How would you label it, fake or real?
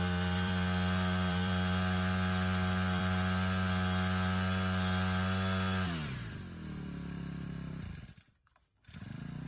fake